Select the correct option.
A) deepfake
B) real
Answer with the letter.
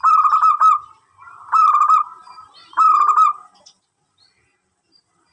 B